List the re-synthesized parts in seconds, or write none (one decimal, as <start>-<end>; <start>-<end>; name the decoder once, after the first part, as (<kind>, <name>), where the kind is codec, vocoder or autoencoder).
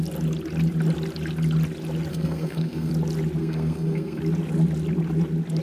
2.1-2.9 (codec, SNAC); 3.4-4.2